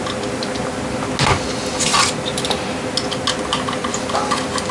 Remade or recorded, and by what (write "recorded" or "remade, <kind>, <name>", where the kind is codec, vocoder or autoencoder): recorded